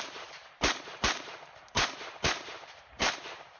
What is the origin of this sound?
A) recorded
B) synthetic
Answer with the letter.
B